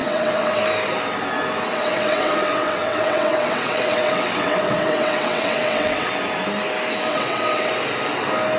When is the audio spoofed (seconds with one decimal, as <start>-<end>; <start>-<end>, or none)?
0.0-0.6; 1.7-6.1; 7.1-7.7